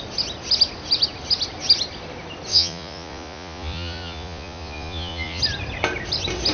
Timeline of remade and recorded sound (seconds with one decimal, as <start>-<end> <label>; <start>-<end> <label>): 0.0-2.5 recorded; 2.5-5.4 remade; 5.4-6.5 recorded